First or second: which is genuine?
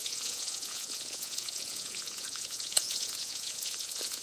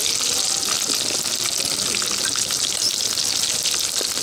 second